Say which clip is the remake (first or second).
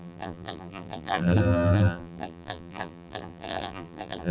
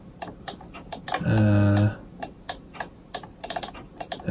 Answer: first